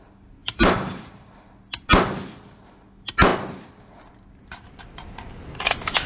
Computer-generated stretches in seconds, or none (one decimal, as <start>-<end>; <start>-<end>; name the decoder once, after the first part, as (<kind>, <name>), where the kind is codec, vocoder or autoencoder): 0.4-1.1 (vocoder, BigVGAN v2)